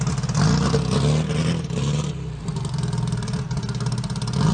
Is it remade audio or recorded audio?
recorded